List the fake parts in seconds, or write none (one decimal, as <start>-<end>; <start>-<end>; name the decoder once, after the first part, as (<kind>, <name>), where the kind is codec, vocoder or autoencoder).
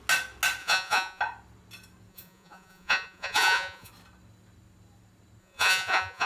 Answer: 0.6-1.2 (vocoder, Vocos); 2.1-3.9; 5.4-6.3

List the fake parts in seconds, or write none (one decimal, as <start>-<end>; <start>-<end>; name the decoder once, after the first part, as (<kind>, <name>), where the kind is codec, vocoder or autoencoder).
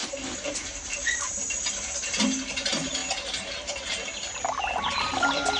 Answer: 0.5-1.3 (vocoder, BigVGAN v2); 2.5-3.0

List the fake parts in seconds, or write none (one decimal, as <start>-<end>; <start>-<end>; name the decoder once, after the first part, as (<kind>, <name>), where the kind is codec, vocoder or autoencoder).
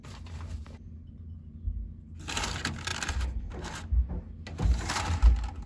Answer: none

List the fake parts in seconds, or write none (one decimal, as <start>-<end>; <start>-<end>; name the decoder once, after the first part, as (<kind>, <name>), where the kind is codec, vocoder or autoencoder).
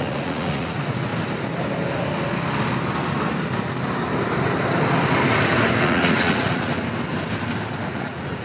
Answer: 0.0-1.1 (vocoder, Vocos); 5.8-6.7; 7.8-8.4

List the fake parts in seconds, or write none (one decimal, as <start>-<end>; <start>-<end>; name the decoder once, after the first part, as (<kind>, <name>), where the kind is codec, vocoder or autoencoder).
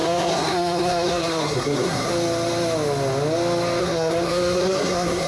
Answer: 0.0-2.1 (codec, SNAC); 3.8-5.3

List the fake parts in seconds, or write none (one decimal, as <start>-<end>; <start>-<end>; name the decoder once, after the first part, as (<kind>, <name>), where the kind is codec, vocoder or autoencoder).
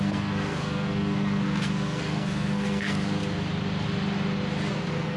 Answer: 0.0-3.2 (codec, SNAC); 4.7-5.2